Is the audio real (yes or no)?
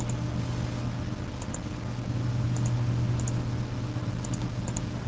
yes